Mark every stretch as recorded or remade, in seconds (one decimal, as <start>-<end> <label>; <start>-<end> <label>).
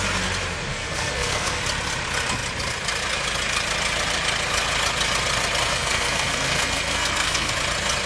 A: 0.0-0.7 recorded; 0.7-1.6 remade; 1.6-5.7 recorded; 5.7-7.5 remade; 7.5-8.1 recorded